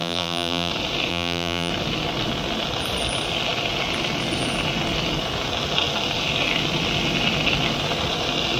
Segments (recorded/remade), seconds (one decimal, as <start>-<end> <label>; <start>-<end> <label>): 0.0-0.7 remade; 0.7-1.1 recorded; 1.1-1.7 remade; 1.7-8.6 recorded